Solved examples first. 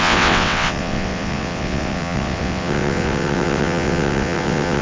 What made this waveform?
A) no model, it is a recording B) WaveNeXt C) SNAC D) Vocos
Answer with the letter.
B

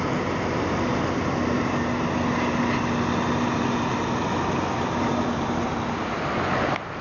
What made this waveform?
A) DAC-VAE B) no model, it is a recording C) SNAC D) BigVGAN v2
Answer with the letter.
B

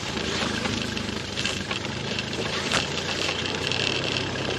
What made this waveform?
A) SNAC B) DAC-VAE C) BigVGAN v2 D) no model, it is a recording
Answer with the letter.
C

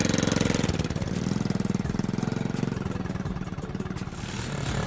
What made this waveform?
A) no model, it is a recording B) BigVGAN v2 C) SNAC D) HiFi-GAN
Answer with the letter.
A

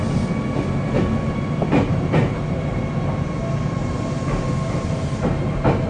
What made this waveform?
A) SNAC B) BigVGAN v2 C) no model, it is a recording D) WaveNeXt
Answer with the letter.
C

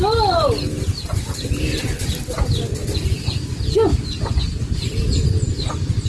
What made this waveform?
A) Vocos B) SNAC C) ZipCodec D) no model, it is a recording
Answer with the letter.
D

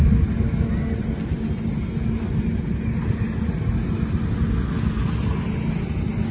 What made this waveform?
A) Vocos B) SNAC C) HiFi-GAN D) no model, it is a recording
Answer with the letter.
D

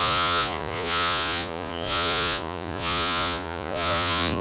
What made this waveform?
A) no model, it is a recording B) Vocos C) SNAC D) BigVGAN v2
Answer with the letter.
B